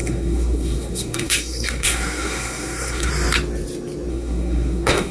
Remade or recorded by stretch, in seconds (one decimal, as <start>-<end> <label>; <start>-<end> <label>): 0.0-3.1 remade; 3.1-4.1 recorded; 4.1-5.1 remade